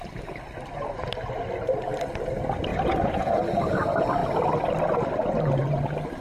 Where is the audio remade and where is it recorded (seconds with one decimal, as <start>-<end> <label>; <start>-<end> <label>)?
0.0-2.7 recorded; 2.7-3.4 remade; 3.4-6.2 recorded